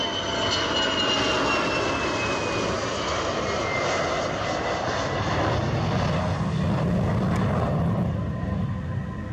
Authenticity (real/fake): real